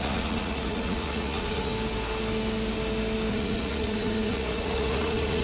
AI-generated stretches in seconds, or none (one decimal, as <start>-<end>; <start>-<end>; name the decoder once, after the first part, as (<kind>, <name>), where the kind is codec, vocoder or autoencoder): 0.0-1.7 (vocoder, Vocos); 3.3-5.4